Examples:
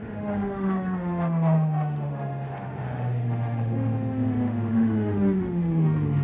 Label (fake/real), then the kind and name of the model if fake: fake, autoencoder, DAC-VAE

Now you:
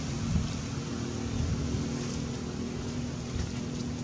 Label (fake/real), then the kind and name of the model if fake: real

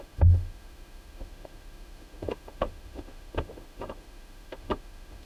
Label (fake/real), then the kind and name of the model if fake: fake, autoencoder, DAC-VAE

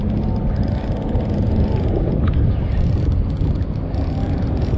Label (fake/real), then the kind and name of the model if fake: real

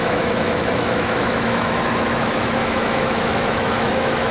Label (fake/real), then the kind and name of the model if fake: fake, autoencoder, DAC-VAE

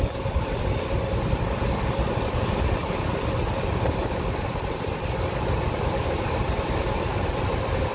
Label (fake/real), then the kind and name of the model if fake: real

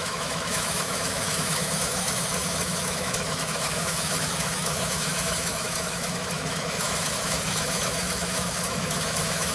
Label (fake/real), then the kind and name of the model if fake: fake, autoencoder, DAC-VAE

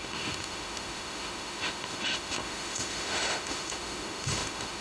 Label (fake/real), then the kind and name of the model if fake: fake, autoencoder, DAC-VAE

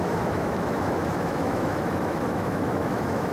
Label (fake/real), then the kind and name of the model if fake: fake, autoencoder, DAC-VAE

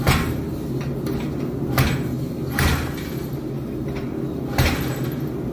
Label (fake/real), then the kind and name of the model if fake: real